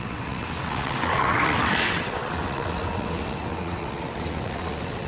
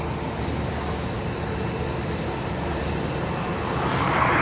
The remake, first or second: first